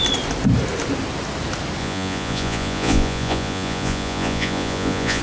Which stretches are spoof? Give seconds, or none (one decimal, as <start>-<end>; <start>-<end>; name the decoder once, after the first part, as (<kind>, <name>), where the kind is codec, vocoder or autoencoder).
1.8-5.2 (vocoder, Vocos)